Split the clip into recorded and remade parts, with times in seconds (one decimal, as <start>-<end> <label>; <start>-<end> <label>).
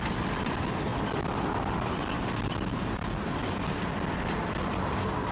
0.0-5.3 recorded